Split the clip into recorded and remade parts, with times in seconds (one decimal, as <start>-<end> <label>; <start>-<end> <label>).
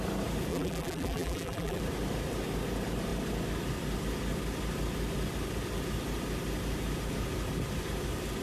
0.0-0.5 recorded; 0.5-1.8 remade; 1.8-8.4 recorded